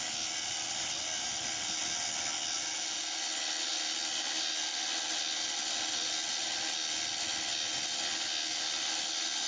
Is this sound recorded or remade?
recorded